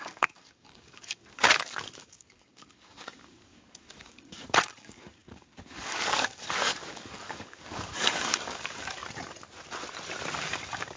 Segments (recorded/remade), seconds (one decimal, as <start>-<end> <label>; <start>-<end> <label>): 0.0-9.0 remade; 9.0-10.4 recorded; 10.4-11.0 remade